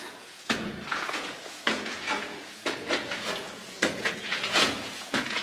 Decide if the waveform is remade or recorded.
remade